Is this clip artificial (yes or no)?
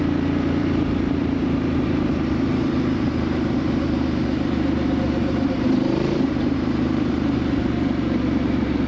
yes